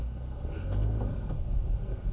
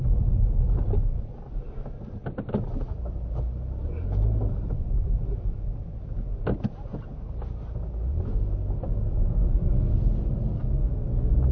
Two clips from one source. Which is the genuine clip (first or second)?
second